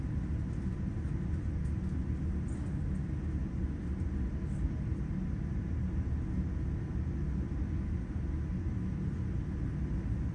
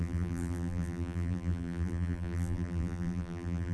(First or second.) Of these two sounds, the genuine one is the first